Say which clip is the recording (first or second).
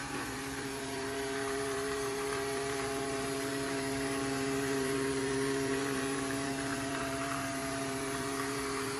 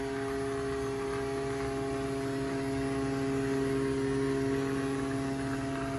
second